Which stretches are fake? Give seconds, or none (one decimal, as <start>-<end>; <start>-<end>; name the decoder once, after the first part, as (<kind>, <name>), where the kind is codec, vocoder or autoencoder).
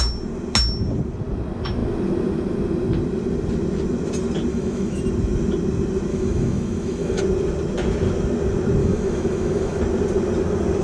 4.5-5.0 (autoencoder, DAC-VAE); 6.1-7.2; 8.8-9.8